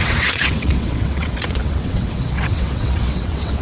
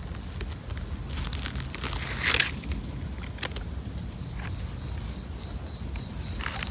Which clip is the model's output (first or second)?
first